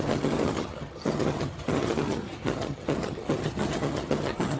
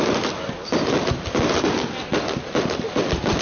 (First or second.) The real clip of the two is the second